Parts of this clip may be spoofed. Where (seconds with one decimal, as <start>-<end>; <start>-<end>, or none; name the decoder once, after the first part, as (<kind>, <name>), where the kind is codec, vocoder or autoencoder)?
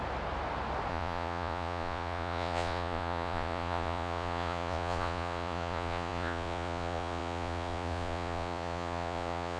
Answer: 0.9-9.6 (vocoder, Vocos)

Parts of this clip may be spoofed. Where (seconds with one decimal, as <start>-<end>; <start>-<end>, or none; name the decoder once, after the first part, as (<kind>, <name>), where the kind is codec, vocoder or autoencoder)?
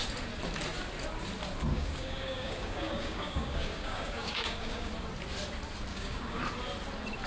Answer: 1.7-4.9 (codec, DAC); 5.9-6.4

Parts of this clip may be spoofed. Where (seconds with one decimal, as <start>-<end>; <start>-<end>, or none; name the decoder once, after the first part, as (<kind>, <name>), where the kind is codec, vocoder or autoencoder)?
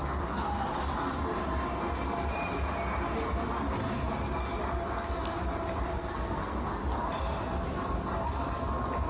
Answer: 5.9-6.7 (codec, SNAC)